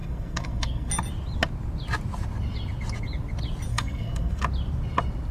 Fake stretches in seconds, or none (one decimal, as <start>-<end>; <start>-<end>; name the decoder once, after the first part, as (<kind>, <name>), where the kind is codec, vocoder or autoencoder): 0.0-0.9 (codec, SNAC); 3.7-4.4